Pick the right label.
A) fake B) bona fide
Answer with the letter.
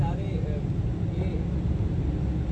B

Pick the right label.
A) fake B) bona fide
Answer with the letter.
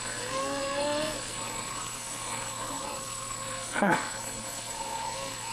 A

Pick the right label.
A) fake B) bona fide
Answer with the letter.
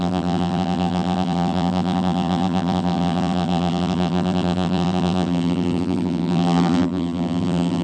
A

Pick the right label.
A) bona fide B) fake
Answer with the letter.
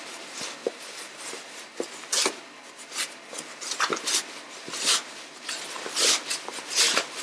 A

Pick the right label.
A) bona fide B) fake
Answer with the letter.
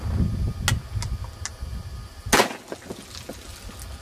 A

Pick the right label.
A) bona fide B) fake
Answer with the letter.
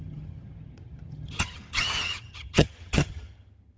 B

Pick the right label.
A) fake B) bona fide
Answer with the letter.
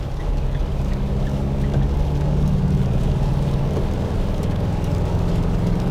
A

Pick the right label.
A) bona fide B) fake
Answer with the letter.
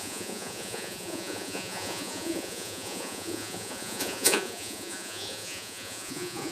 B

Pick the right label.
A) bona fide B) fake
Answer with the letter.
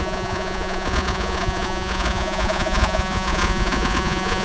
B